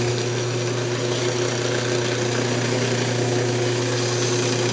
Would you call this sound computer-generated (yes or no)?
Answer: no